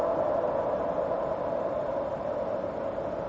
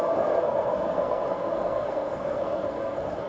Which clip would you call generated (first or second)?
second